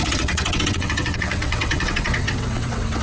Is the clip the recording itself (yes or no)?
no